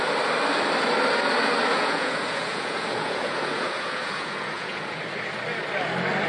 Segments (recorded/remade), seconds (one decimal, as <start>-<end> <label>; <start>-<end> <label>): 0.0-1.7 recorded; 1.7-5.0 remade; 5.0-6.3 recorded